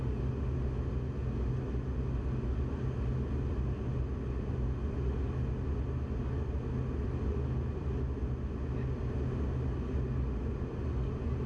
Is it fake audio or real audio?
real